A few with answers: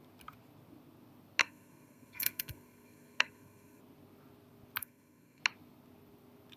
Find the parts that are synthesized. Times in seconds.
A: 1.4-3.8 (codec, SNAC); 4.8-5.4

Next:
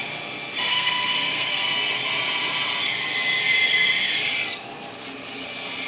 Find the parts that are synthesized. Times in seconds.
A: 0.7-1.7 (codec, SNAC)

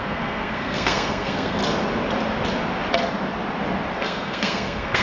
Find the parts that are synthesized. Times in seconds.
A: 0.0-1.6 (codec, SNAC); 4.0-5.0

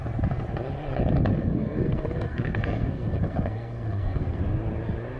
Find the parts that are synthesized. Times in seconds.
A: 1.3-4.4 (codec, SNAC)

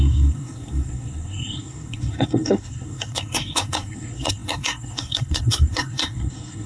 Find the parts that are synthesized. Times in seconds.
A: 0.0-6.7 (codec, SNAC)